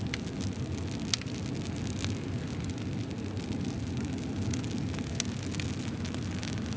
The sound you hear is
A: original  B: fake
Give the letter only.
A